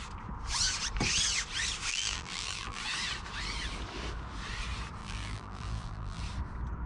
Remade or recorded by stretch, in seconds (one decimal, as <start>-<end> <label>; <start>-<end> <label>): 0.0-1.9 recorded; 1.9-2.8 remade; 2.8-5.0 recorded; 5.0-6.2 remade; 6.2-6.9 recorded